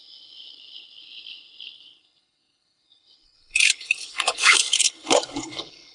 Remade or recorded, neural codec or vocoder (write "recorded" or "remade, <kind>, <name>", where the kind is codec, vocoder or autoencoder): remade, codec, HILCodec